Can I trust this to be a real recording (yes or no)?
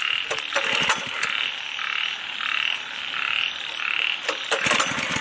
yes